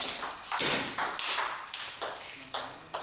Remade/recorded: recorded